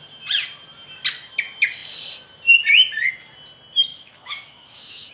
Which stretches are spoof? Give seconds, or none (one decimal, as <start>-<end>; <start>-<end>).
3.9-5.1